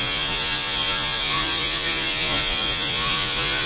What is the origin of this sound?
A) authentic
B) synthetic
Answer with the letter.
B